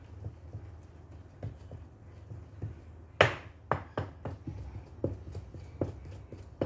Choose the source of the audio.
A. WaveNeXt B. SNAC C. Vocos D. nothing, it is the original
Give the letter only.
D